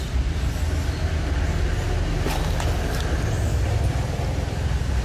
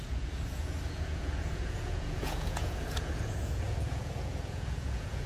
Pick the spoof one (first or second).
second